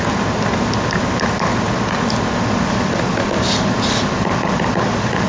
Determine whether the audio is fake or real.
real